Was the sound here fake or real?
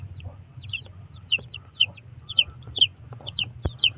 fake